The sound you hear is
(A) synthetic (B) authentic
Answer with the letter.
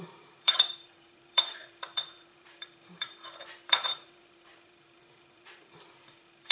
A